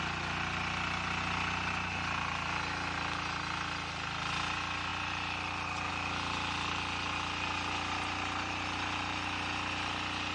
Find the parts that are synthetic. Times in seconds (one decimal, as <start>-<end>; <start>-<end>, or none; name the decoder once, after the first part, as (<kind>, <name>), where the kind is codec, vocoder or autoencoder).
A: none